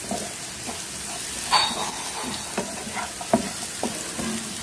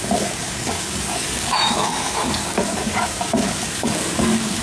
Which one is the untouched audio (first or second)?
first